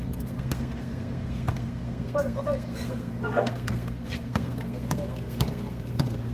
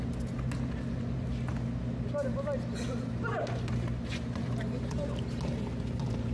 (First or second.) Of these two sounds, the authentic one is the second